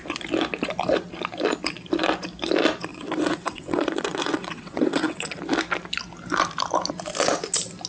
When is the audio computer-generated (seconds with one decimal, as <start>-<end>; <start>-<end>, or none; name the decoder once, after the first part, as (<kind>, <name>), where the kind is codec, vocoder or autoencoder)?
2.9-5.4 (vocoder, WaveNeXt)